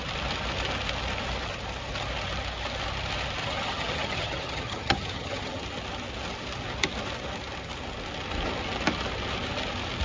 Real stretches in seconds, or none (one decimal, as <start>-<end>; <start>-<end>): 0.0-3.4; 5.6-10.0